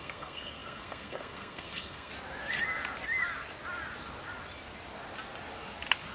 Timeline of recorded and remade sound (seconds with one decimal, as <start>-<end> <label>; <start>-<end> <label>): 0.0-2.1 remade; 2.1-6.1 recorded